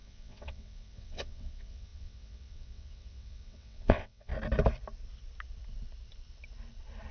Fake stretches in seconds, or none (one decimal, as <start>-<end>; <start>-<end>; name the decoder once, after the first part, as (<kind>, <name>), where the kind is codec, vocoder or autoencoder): 0.0-4.3 (vocoder, WaveNeXt)